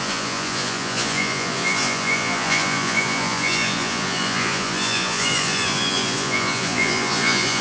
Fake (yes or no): yes